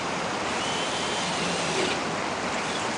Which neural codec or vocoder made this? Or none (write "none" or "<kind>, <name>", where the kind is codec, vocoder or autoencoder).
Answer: none